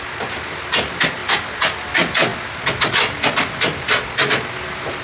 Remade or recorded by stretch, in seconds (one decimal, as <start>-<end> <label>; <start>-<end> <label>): 0.0-5.0 recorded